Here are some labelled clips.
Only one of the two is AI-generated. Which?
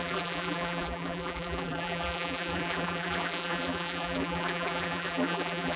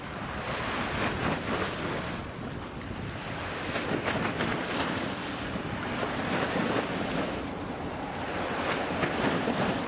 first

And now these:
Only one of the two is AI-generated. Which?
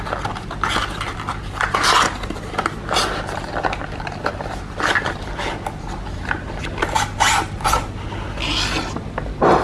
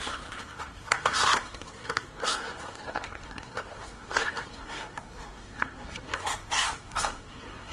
second